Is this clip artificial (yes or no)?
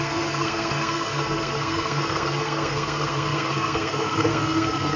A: yes